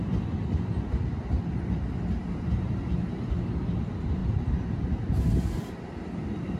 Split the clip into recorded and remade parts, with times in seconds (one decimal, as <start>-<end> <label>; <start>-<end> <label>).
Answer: 0.0-6.6 recorded